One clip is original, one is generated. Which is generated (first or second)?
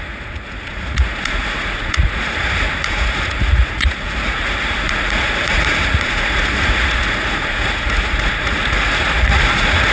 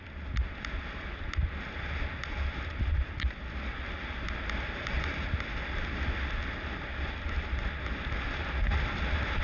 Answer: first